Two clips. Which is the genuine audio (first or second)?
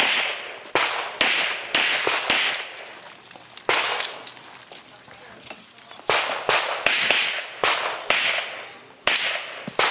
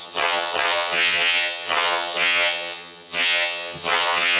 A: first